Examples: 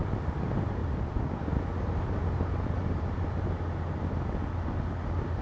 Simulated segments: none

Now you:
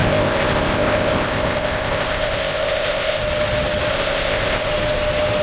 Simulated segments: 0.0-3.2 (codec, ZipCodec); 3.9-4.7

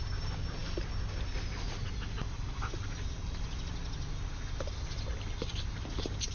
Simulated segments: none

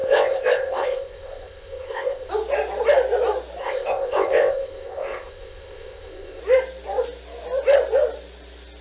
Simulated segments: 0.0-2.3 (codec, ZipCodec); 3.6-6.4

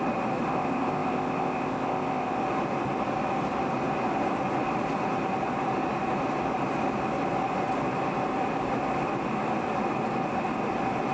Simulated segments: 0.5-2.4 (codec, ZipCodec)